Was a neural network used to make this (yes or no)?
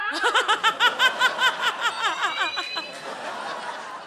no